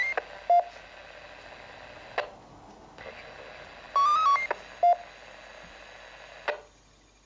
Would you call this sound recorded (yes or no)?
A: yes